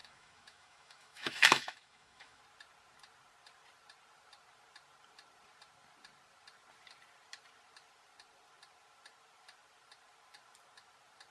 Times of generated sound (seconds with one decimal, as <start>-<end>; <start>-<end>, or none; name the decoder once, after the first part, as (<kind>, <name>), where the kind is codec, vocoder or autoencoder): 0.0-2.4 (autoencoder, DAC-VAE)